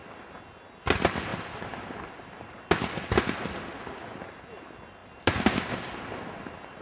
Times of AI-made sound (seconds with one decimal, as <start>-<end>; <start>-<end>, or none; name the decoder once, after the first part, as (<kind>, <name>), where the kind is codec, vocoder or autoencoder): 5.0-6.0 (vocoder, BigVGAN v2)